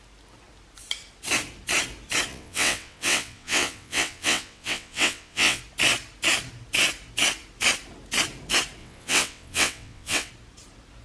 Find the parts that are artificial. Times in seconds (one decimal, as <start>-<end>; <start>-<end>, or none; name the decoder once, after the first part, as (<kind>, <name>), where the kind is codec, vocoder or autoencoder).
2.3-5.6 (vocoder, WaveNeXt); 8.8-10.3